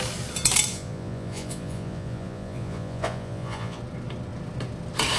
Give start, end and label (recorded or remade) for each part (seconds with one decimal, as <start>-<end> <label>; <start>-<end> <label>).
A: 0.0-0.7 recorded; 0.7-3.8 remade; 3.8-5.2 recorded